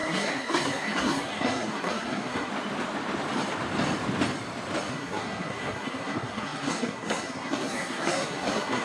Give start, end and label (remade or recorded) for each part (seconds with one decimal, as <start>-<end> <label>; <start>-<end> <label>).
0.0-2.5 remade; 2.5-4.9 recorded; 4.9-8.8 remade